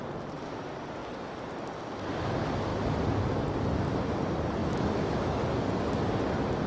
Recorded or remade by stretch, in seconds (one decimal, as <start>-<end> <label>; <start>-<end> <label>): 0.0-4.6 recorded; 4.6-5.4 remade; 5.4-6.7 recorded